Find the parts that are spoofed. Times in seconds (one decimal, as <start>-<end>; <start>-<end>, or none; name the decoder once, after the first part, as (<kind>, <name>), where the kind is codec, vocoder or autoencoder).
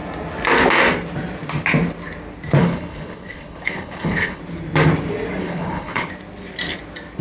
2.6-4.4 (codec, HILCodec); 5.4-6.1